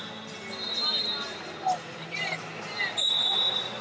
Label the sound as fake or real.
real